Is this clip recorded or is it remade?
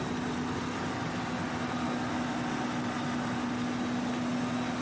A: recorded